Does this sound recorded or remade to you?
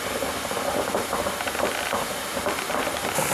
recorded